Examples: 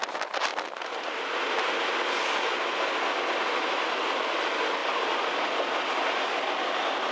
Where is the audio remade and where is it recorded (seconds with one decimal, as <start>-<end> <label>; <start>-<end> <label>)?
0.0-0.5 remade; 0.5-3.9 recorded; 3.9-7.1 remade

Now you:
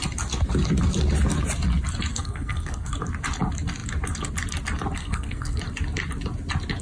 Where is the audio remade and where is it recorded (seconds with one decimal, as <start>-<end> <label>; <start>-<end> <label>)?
0.0-2.1 recorded; 2.1-2.9 remade; 2.9-5.0 recorded; 5.0-5.6 remade; 5.6-6.8 recorded

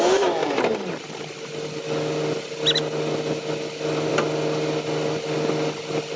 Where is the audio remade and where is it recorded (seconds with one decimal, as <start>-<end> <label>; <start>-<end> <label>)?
0.0-6.2 recorded